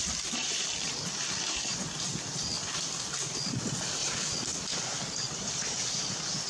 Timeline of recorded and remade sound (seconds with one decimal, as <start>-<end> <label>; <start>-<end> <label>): 0.0-2.5 remade; 2.5-3.6 recorded; 3.6-4.0 remade; 4.0-4.6 recorded; 4.6-6.5 remade